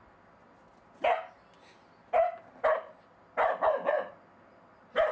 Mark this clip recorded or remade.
recorded